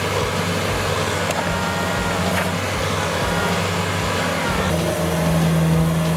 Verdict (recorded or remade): recorded